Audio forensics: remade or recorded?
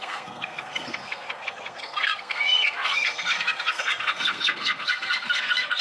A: remade